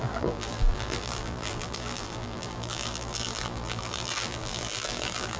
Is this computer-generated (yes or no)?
yes